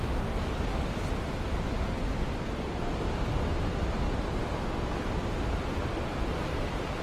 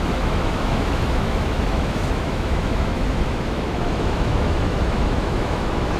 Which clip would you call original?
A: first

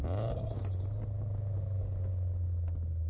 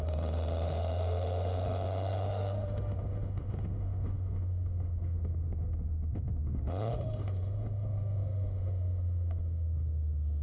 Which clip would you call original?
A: first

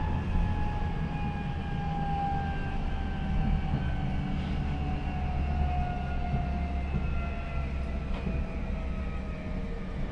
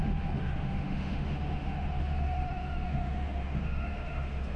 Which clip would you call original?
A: first